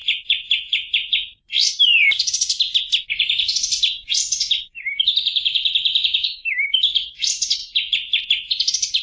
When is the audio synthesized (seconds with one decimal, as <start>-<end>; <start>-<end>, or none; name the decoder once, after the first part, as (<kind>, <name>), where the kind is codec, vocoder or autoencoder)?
5.3-6.8 (autoencoder, DAC-VAE)